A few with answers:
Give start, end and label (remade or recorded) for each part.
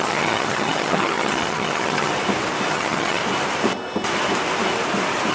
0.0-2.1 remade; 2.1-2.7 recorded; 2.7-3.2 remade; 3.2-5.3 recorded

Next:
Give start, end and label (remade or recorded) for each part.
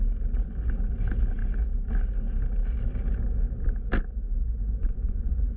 0.0-4.8 recorded; 4.8-5.6 remade